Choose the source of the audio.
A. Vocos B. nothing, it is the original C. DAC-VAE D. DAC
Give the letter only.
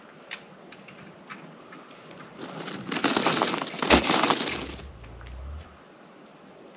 B